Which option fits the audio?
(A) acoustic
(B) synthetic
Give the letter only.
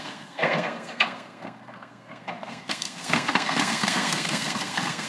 B